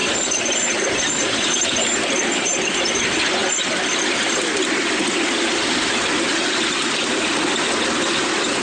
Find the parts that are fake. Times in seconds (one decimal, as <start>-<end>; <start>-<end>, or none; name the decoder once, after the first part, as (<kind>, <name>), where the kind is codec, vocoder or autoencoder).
none